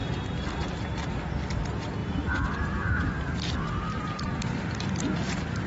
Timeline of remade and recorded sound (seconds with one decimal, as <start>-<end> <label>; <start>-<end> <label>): 0.0-2.0 recorded; 2.0-5.7 remade